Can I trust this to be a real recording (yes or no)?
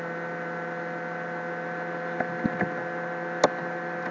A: yes